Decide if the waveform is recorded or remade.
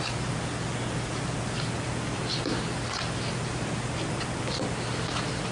recorded